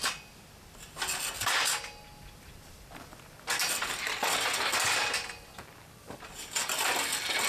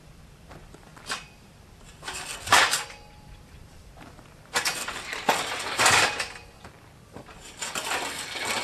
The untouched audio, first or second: first